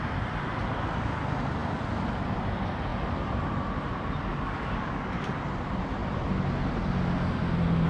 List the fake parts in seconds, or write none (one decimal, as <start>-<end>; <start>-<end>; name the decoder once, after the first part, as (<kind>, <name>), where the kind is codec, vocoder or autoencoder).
4.3-5.3 (codec, DAC)